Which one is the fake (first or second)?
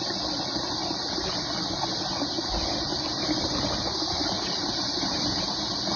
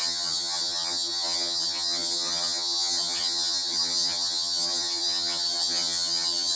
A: second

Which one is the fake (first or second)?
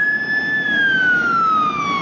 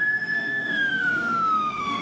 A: second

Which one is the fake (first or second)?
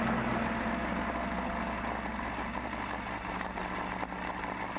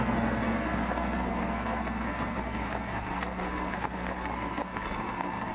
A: second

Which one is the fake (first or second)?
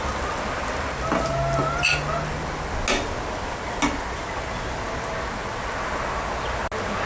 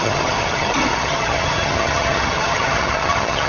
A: second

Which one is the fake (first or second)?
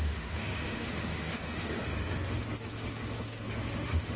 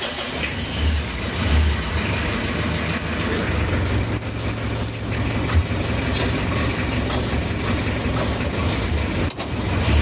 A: first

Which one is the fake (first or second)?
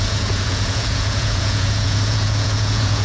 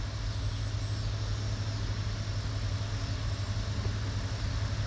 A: first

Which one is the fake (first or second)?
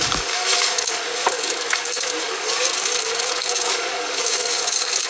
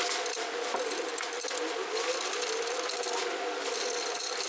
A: first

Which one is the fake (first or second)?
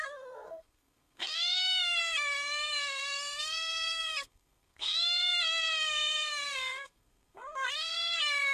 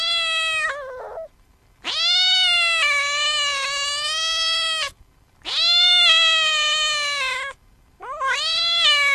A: first